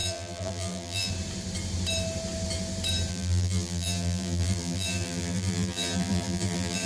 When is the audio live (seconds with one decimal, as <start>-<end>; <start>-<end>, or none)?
1.1-3.1